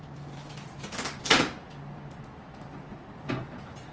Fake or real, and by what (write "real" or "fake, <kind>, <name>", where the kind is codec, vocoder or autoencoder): real